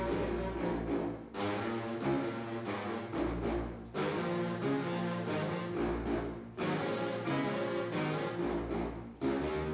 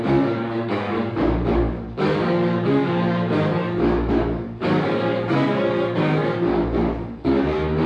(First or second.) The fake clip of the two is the second